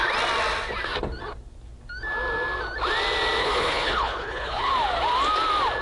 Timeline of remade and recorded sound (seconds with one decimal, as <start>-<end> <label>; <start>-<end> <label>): 0.0-3.4 recorded; 3.4-4.7 remade; 4.7-5.8 recorded